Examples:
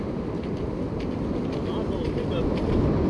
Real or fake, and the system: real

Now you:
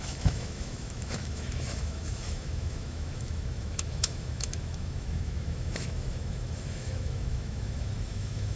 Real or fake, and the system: fake, autoencoder, DAC-VAE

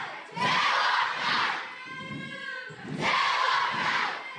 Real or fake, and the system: real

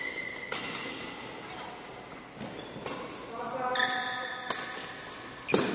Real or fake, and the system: real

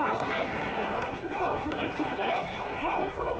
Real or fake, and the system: fake, codec, SNAC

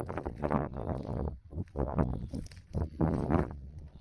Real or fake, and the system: fake, vocoder, Vocos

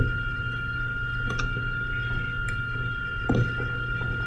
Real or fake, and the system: real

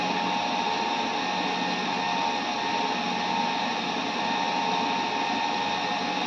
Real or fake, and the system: real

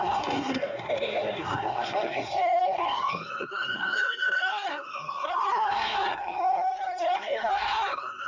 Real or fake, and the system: fake, codec, SNAC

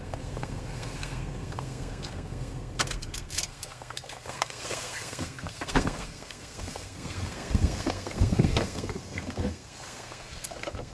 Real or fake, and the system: fake, codec, SNAC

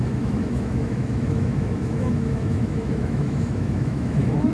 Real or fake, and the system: fake, autoencoder, DAC-VAE